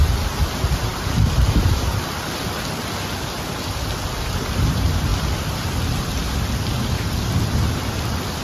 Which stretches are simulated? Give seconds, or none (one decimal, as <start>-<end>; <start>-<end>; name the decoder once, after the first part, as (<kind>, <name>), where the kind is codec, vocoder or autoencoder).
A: none